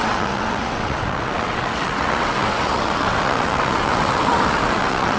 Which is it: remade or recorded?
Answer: remade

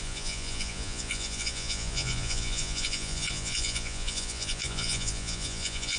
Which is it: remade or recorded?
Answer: remade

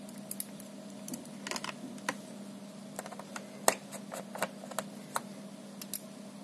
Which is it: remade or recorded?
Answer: recorded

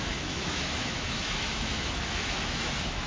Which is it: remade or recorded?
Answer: remade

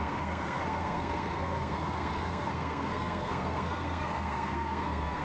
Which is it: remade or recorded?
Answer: remade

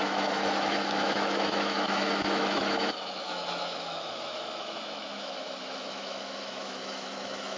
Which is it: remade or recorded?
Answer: remade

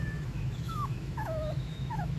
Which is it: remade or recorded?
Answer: remade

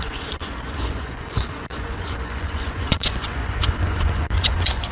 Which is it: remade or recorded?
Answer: remade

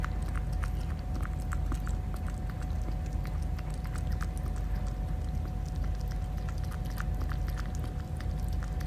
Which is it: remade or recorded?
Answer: recorded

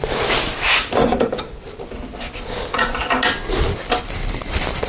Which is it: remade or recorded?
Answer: recorded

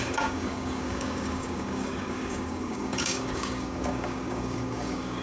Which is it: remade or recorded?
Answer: remade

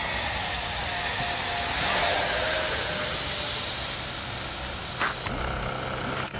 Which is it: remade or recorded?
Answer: recorded